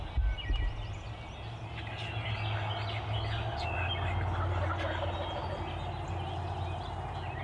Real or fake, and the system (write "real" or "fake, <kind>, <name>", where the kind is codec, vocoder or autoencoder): real